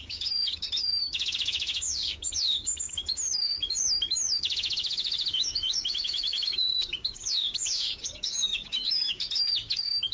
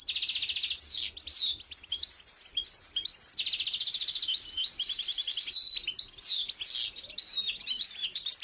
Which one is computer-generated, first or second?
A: first